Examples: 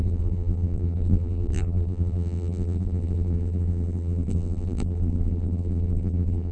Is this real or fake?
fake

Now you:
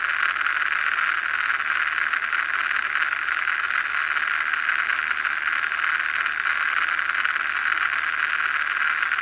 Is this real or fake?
real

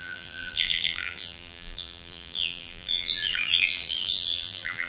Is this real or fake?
fake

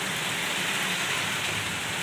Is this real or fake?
fake